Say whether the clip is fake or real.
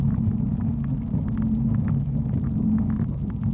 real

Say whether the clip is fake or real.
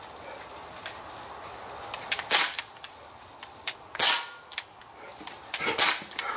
real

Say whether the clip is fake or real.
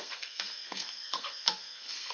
fake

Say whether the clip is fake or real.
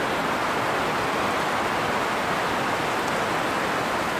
real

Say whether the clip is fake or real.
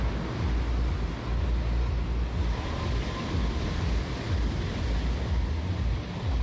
real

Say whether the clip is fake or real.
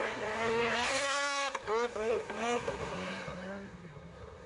fake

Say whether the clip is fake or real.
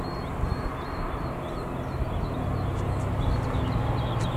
real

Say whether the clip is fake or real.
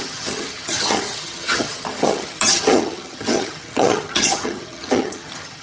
fake